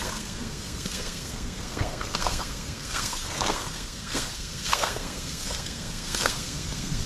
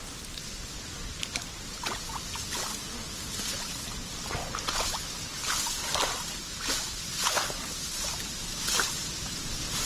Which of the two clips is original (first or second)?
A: second